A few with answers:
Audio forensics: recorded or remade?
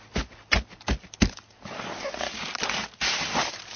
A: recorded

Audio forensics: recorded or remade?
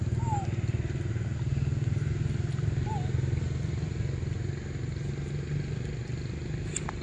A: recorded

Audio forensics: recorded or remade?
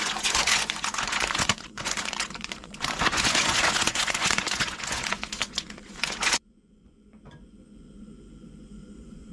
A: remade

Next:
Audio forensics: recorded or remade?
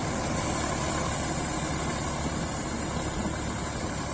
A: recorded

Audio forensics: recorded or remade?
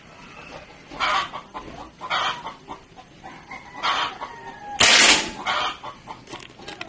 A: recorded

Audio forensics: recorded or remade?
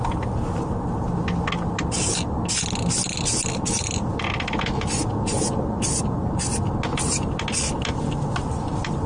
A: recorded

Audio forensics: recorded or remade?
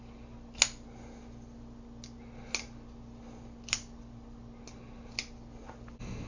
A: recorded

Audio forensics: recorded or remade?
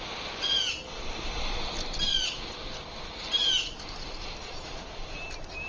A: recorded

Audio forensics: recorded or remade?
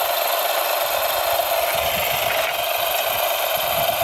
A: recorded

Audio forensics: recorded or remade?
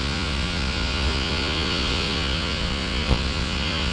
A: remade